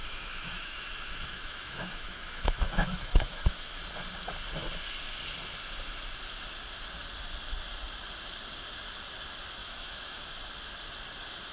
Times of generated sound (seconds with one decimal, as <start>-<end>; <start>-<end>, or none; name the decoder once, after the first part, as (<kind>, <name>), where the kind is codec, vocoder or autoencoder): 0.0-3.8 (autoencoder, DAC-VAE); 9.6-10.2